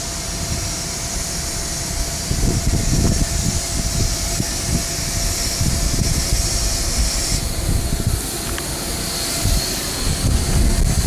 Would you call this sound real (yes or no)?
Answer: yes